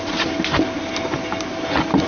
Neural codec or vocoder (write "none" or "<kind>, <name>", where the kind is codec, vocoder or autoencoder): none